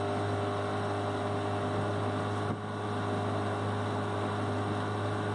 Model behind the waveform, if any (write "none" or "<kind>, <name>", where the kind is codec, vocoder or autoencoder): none